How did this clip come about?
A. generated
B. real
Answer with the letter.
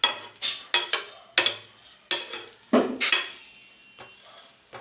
B